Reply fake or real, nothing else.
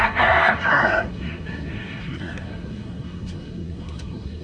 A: fake